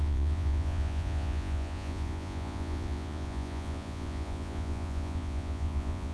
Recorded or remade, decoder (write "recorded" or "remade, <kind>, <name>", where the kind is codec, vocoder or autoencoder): remade, vocoder, Vocos